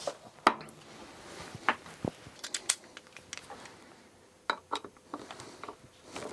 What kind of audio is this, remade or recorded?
recorded